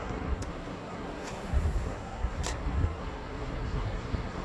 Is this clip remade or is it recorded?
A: remade